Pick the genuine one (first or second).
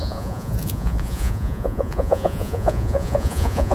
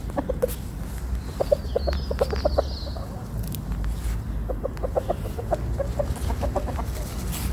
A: second